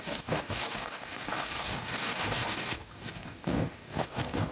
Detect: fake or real fake